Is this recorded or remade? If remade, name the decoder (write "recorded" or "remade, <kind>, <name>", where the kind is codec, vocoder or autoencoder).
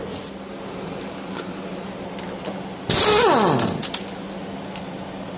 recorded